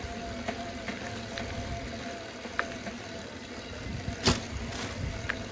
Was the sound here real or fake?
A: real